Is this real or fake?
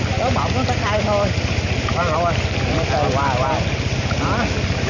real